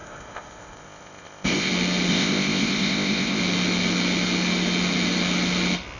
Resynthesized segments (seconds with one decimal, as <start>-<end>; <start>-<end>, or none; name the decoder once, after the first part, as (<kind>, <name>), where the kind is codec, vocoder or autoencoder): 0.0-1.7 (codec, ZipCodec); 2.1-3.4